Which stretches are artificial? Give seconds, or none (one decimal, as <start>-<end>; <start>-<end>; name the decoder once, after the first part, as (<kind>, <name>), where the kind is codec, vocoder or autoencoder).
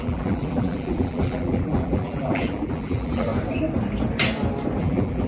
0.0-3.3 (vocoder, BigVGAN v2); 4.8-5.3